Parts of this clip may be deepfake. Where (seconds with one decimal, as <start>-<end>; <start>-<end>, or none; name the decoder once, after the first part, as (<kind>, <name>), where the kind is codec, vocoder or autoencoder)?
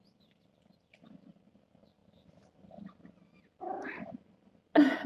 none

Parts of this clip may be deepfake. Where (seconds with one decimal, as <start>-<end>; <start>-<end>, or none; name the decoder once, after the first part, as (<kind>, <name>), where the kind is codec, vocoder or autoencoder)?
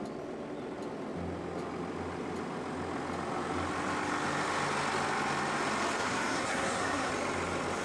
6.0-7.1 (codec, SNAC)